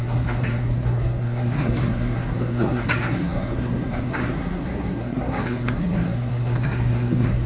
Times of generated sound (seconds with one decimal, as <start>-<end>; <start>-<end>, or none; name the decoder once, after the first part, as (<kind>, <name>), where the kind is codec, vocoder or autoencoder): 0.0-7.5 (codec, SNAC)